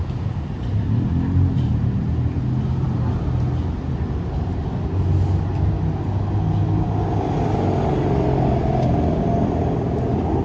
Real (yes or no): yes